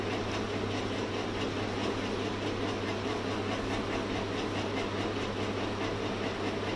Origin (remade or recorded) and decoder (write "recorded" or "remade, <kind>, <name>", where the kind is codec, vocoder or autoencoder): recorded